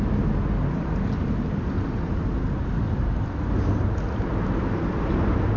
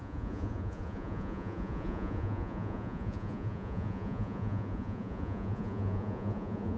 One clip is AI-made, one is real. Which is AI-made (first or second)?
second